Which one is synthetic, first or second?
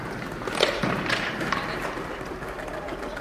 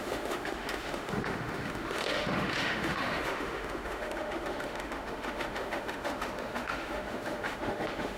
second